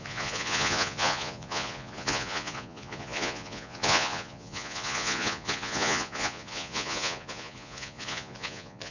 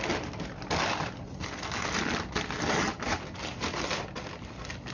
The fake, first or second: first